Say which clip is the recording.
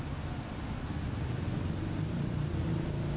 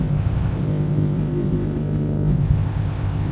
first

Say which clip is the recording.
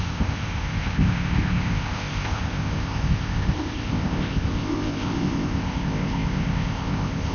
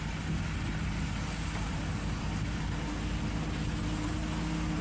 second